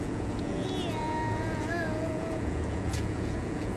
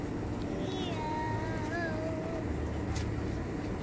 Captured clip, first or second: second